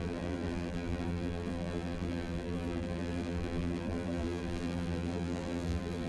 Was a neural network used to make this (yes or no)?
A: yes